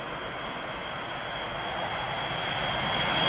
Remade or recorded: recorded